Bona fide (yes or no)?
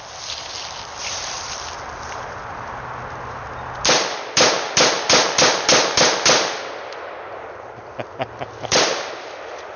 yes